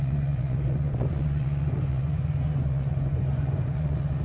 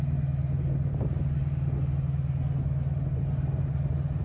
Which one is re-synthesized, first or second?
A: first